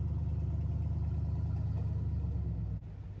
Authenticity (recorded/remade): recorded